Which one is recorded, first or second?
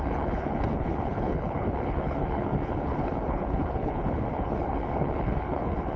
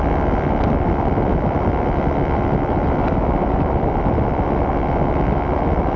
second